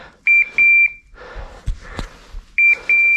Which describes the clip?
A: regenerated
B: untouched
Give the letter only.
B